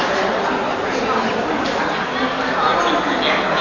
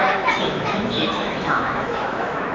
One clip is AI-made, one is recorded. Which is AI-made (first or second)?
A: second